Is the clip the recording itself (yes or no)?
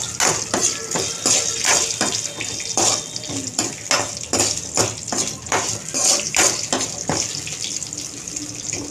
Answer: yes